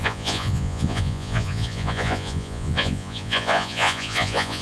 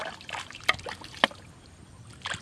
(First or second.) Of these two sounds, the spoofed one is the first